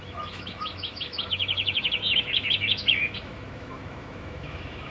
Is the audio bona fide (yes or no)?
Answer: no